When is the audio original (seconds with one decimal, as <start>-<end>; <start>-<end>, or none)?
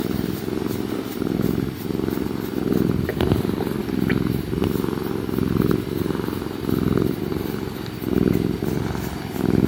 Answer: 0.0-9.7